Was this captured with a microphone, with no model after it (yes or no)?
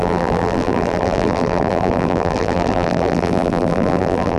no